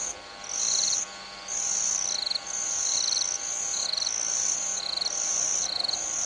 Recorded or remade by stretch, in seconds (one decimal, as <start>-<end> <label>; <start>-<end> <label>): 0.0-6.3 recorded